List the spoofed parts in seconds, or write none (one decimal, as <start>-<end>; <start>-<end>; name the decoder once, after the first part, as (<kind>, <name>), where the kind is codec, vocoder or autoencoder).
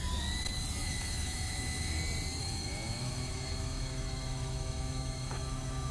0.8-2.0 (autoencoder, DAC-VAE); 2.4-5.9